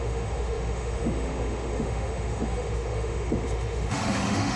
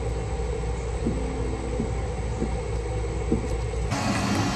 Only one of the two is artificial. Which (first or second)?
first